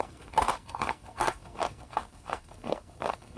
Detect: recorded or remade remade